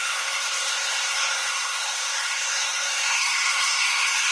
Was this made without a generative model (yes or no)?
no